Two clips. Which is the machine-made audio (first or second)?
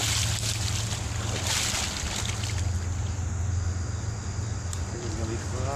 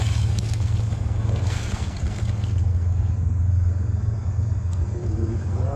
second